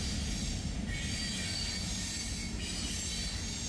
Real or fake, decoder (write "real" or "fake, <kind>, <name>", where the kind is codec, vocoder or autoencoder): real